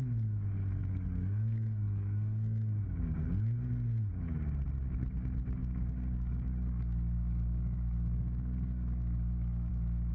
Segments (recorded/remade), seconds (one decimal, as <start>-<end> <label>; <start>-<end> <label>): 0.0-0.8 recorded; 0.8-4.1 remade; 4.1-5.6 recorded; 5.6-9.7 remade; 9.7-10.1 recorded